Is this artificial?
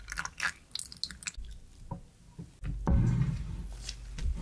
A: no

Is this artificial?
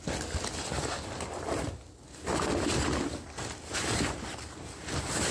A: no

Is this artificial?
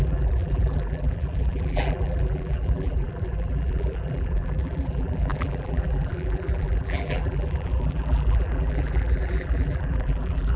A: yes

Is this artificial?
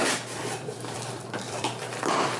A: yes